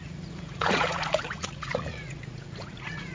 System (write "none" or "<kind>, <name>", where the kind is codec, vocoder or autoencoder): vocoder, Vocos